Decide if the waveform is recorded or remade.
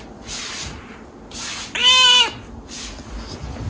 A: recorded